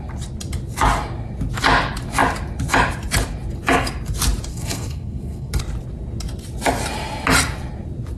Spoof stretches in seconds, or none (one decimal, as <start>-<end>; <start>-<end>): 4.5-5.6